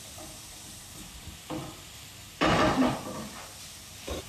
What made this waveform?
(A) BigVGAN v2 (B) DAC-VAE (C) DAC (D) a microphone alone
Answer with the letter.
A